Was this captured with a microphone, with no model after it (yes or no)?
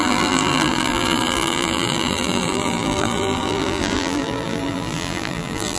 no